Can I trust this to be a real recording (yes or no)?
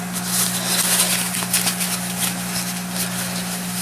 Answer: yes